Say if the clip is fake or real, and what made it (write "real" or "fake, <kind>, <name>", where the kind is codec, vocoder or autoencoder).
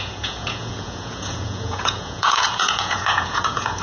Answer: fake, vocoder, Vocos